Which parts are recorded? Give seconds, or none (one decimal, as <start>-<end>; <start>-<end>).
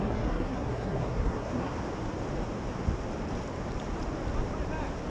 1.7-5.1